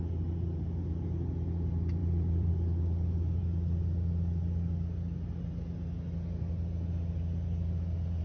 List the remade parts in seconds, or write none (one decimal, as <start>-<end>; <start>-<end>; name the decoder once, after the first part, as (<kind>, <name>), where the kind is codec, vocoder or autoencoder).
2.0-2.5 (vocoder, BigVGAN v2)